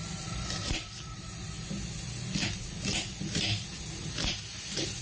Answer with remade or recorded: recorded